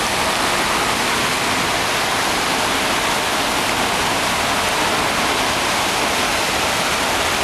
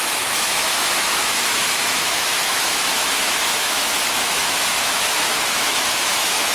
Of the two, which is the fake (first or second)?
second